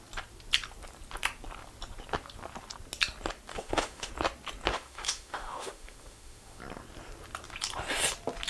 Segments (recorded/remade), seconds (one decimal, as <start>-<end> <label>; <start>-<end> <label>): 0.0-3.5 recorded; 3.5-4.1 remade; 4.1-4.7 recorded; 4.7-6.6 remade; 6.6-8.5 recorded